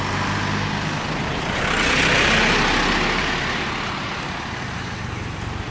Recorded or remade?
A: recorded